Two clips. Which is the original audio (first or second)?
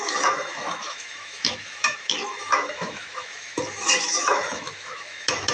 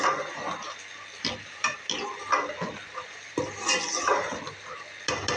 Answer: second